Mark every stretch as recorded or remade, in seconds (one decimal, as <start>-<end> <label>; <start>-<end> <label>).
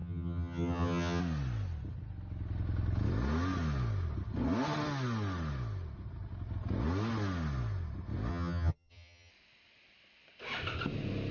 0.0-1.2 remade; 1.2-8.3 recorded; 8.3-9.3 remade; 9.3-11.3 recorded